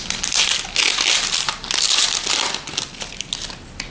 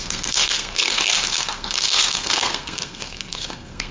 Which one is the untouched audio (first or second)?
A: first